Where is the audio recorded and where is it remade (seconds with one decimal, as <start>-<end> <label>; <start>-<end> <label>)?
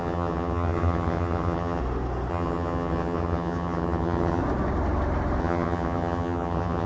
0.0-1.8 remade; 1.8-2.3 recorded; 2.3-4.4 remade; 4.4-5.4 recorded; 5.4-6.9 remade